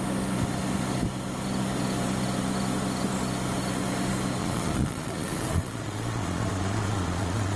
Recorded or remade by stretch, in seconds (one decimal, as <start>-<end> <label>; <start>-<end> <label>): 0.0-4.4 recorded; 4.4-7.6 remade